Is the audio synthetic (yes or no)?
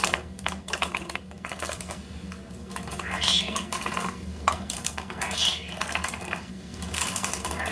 yes